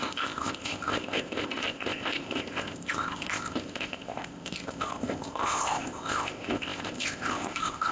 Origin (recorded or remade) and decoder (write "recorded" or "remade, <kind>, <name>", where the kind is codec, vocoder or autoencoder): remade, codec, ZipCodec